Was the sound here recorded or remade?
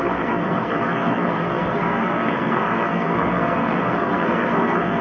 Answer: remade